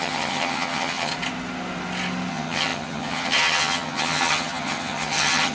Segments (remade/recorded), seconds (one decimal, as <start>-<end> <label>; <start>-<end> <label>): 0.0-1.1 remade; 1.1-2.3 recorded; 2.3-5.5 remade